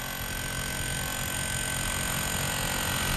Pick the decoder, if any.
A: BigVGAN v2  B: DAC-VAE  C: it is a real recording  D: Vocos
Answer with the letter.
C